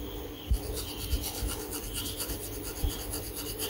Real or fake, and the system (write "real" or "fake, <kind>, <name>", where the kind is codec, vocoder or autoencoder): real